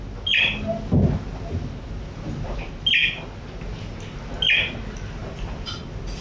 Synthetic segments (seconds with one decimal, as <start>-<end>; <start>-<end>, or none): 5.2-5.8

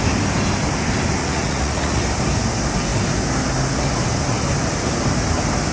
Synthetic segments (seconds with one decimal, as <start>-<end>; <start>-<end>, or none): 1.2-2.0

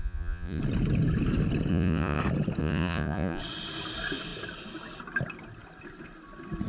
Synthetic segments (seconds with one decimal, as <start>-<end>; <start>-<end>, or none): 0.0-0.6; 1.7-2.2; 2.6-3.4

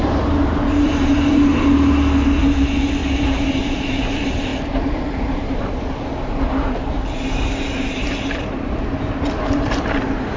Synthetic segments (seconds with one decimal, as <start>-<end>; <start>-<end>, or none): 0.0-1.5; 2.4-10.4

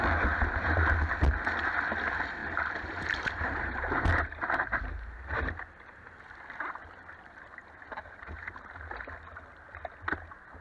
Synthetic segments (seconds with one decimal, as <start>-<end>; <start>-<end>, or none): 2.4-5.5; 7.6-8.3

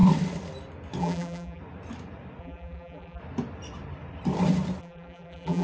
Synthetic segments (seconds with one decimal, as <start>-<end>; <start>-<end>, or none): 1.0-1.6; 2.4-3.2; 4.8-5.6

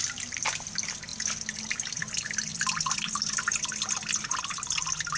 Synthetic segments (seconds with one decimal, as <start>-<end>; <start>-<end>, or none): none